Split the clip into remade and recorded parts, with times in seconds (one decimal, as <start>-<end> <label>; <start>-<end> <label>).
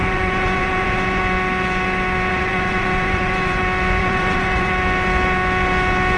0.0-1.2 remade; 1.2-2.3 recorded; 2.3-3.6 remade; 3.6-4.0 recorded; 4.0-4.7 remade; 4.7-6.2 recorded